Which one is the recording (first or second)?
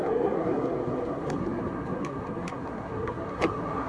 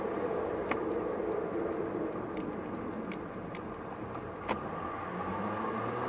second